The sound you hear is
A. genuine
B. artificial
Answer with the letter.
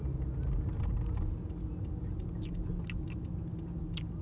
A